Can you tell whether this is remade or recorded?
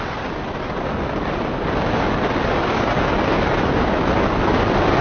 recorded